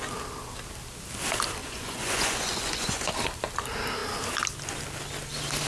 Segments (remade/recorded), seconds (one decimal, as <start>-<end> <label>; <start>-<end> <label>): 0.0-1.6 recorded; 1.6-3.1 remade; 3.1-5.7 recorded